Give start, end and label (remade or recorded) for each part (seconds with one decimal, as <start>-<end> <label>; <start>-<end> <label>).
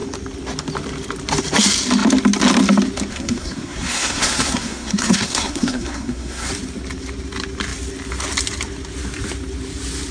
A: 0.0-3.1 recorded; 3.1-6.5 remade; 6.5-10.1 recorded